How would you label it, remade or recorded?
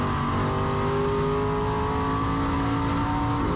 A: recorded